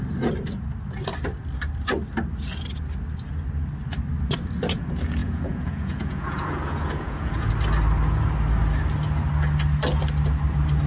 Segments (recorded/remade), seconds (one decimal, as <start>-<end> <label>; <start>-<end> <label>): 0.0-5.2 recorded; 5.2-7.5 remade; 7.5-10.9 recorded